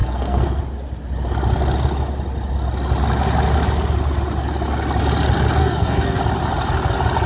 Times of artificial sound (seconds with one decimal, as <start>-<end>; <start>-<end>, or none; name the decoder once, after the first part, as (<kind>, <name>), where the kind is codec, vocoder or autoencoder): 0.0-0.6 (codec, SNAC); 5.6-6.2